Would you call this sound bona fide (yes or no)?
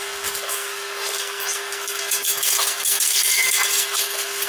no